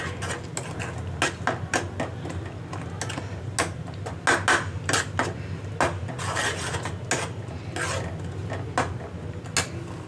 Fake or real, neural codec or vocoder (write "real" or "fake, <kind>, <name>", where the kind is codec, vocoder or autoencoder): real